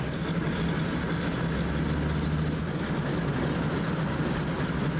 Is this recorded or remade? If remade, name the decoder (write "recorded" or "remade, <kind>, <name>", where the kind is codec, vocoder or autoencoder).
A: recorded